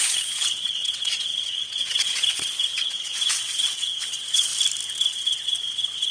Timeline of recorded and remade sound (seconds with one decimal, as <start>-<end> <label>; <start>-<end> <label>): 0.0-4.5 remade; 4.5-5.1 recorded; 5.1-6.1 remade